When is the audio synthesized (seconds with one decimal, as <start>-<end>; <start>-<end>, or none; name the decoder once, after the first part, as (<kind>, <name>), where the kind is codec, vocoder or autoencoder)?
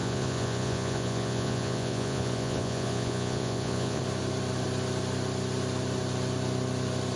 0.0-4.0 (vocoder, Vocos)